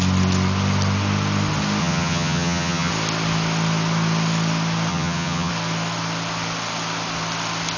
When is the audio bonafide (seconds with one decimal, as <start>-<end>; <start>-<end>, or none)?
0.0-1.8; 2.9-4.9; 5.5-7.8